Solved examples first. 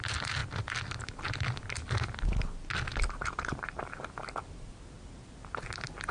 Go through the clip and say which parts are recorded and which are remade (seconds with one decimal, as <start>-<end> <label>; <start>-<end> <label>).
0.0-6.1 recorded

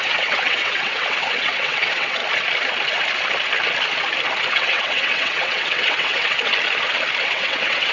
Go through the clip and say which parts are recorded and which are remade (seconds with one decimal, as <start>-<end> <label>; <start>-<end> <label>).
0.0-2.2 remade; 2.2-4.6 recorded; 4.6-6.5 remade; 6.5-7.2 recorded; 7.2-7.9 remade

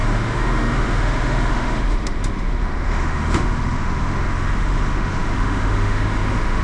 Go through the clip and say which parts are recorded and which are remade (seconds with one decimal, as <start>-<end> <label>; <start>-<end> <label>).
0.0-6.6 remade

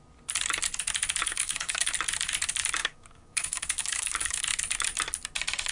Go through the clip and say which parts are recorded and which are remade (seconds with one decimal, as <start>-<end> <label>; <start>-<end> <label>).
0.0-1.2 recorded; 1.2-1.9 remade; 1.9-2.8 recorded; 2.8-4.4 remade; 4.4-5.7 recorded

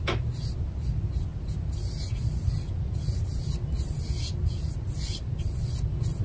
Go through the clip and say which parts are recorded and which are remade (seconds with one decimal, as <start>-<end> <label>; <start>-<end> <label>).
0.0-6.2 recorded